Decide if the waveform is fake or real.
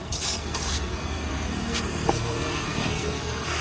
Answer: fake